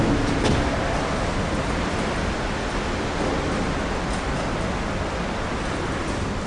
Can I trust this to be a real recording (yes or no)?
yes